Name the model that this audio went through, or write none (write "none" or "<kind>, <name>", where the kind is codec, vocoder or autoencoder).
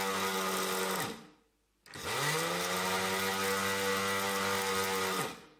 none